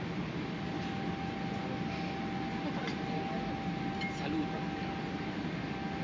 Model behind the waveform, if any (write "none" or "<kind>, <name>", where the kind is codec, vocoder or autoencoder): none